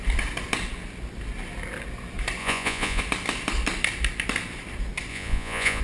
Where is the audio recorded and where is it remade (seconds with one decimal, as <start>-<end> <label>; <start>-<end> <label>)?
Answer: 0.0-2.4 recorded; 2.4-3.0 remade; 3.0-5.1 recorded; 5.1-5.8 remade